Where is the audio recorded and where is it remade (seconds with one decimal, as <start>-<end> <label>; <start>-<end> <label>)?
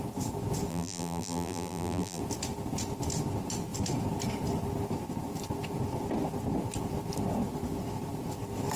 0.0-0.7 recorded; 0.7-2.2 remade; 2.2-8.8 recorded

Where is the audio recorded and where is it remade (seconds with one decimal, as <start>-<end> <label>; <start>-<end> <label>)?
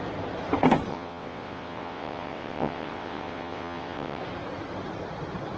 0.0-0.9 recorded; 0.9-4.2 remade; 4.2-5.6 recorded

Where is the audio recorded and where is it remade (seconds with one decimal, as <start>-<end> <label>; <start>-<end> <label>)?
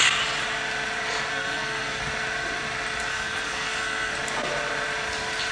0.0-1.3 recorded; 1.3-2.0 remade; 2.0-3.1 recorded; 3.1-4.1 remade; 4.1-5.5 recorded